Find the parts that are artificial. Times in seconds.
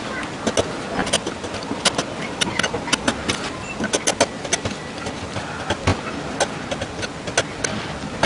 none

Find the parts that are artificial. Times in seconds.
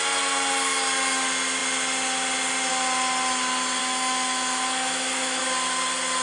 3.8-5.4 (autoencoder, DAC-VAE)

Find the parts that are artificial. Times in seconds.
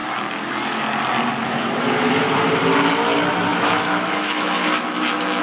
3.5-5.4 (autoencoder, DAC-VAE)